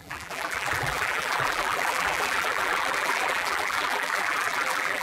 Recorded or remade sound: remade